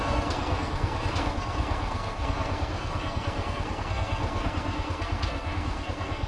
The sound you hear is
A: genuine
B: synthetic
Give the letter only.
B